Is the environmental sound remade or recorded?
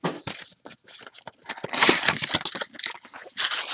recorded